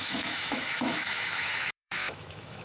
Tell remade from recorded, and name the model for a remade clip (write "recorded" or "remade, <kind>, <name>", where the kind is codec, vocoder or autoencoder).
remade, autoencoder, DAC-VAE